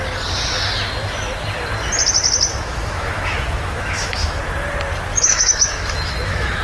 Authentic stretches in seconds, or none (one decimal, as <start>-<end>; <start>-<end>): 0.0-2.5; 4.4-5.1